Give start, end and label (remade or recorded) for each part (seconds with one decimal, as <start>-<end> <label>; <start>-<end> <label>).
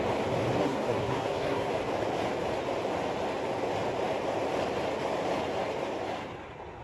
0.0-0.6 recorded; 0.6-1.7 remade; 1.7-6.8 recorded